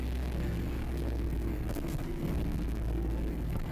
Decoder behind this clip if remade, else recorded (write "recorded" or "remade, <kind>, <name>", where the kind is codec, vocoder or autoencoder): remade, codec, SNAC